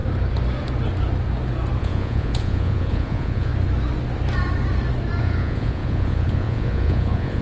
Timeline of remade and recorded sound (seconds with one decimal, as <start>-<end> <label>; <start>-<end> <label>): 0.0-1.8 recorded; 1.8-3.5 remade; 3.5-5.2 recorded; 5.2-7.4 remade